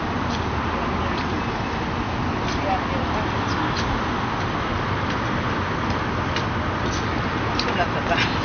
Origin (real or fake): real